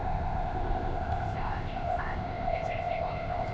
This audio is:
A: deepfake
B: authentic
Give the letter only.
A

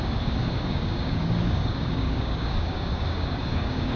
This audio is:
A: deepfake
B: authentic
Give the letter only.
A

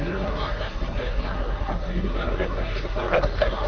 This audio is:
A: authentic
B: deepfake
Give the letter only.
B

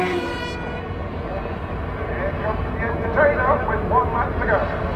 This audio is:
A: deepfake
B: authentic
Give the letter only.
B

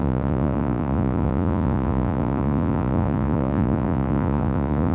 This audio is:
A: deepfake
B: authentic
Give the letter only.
A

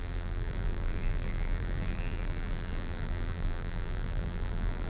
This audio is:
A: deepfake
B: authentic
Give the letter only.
A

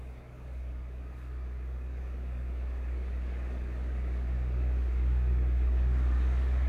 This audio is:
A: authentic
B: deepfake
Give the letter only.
B